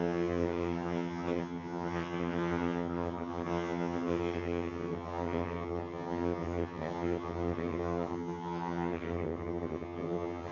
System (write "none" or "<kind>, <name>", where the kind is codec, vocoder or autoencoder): vocoder, HiFi-GAN